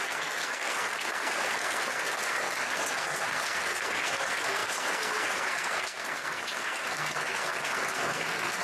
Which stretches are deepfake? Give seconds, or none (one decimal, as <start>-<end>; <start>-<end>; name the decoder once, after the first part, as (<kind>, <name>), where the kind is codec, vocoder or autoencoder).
0.0-8.6 (codec, SNAC)